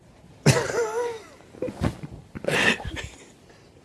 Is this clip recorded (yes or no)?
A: yes